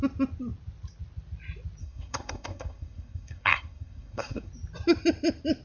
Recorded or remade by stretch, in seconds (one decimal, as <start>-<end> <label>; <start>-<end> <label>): 0.0-1.8 recorded; 1.8-4.5 remade; 4.5-5.6 recorded